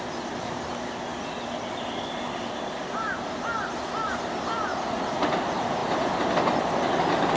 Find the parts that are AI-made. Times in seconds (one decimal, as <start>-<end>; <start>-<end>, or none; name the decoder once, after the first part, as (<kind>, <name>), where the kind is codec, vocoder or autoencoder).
4.7-5.2 (vocoder, Vocos)